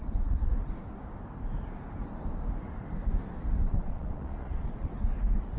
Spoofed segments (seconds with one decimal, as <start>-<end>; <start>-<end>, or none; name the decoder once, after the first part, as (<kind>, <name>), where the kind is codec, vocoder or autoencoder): 0.0-0.5 (vocoder, Vocos); 3.7-4.9